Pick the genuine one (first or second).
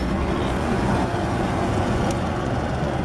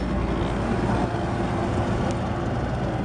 second